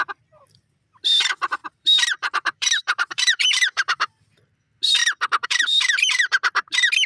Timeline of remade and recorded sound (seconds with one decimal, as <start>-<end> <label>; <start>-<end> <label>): 0.0-1.6 recorded; 1.6-4.1 remade; 4.1-5.0 recorded; 5.0-6.3 remade; 6.3-7.1 recorded